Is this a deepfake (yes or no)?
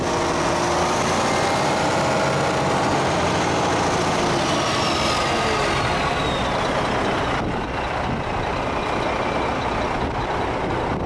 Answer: no